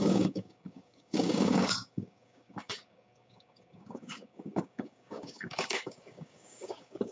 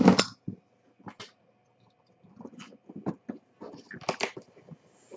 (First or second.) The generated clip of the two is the first